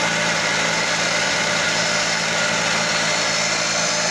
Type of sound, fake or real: real